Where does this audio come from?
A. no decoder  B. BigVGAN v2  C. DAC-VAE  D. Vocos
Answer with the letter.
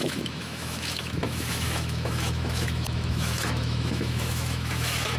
C